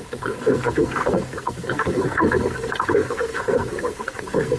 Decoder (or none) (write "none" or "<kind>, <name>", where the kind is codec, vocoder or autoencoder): codec, SNAC